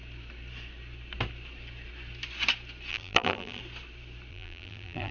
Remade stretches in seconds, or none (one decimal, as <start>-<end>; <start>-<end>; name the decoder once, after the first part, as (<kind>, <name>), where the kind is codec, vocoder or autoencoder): 2.9-3.6 (vocoder, BigVGAN v2); 4.3-5.1